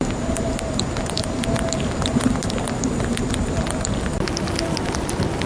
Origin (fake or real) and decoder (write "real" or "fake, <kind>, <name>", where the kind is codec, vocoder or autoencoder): real